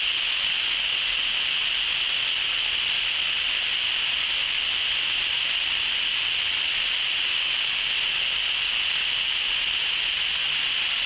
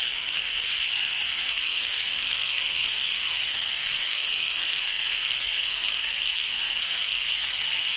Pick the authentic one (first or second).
first